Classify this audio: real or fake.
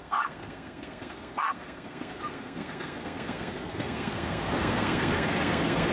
fake